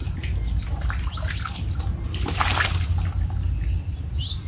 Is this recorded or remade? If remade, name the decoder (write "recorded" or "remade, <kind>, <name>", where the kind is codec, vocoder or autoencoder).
recorded